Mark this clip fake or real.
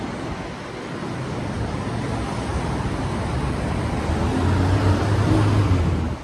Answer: real